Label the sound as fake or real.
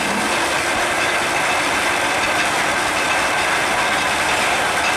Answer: real